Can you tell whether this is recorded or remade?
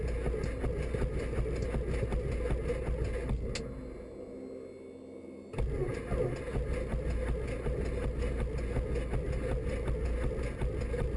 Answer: recorded